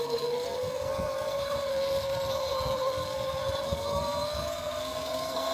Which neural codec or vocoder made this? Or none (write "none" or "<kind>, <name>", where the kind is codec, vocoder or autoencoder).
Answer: codec, SNAC